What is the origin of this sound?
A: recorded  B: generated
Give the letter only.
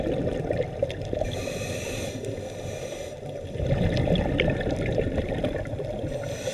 A